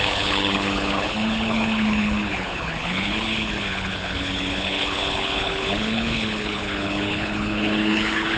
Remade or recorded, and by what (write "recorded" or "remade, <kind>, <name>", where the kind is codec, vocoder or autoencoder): remade, codec, HILCodec